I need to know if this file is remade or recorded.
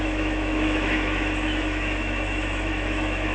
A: remade